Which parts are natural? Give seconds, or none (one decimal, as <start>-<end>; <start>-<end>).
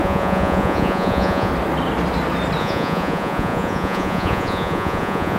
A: 1.5-2.6